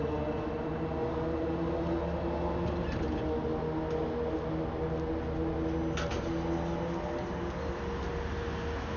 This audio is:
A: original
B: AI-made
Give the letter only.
A